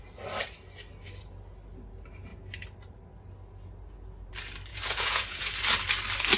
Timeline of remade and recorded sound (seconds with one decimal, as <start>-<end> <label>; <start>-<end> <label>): 0.0-4.7 recorded; 4.7-5.5 remade; 5.5-6.4 recorded